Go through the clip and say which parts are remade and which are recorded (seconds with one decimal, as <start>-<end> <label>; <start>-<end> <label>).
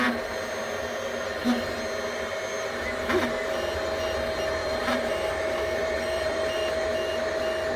0.0-4.6 recorded; 4.6-5.3 remade; 5.3-5.8 recorded; 5.8-6.7 remade; 6.7-7.8 recorded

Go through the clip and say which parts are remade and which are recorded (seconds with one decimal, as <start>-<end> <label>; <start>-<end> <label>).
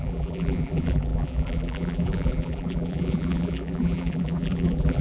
0.0-5.0 remade